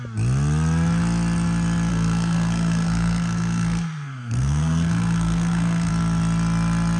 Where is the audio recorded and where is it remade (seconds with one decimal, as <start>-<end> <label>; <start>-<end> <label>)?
0.0-1.9 recorded; 1.9-5.9 remade; 5.9-7.0 recorded

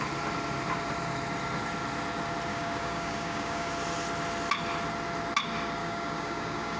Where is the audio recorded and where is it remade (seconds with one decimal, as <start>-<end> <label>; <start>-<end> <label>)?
0.0-2.5 recorded; 2.5-3.7 remade; 3.7-5.8 recorded; 5.8-6.8 remade

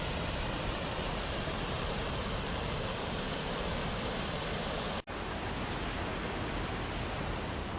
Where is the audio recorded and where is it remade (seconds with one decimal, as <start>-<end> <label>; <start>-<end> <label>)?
0.0-3.8 remade; 3.8-7.2 recorded; 7.2-7.8 remade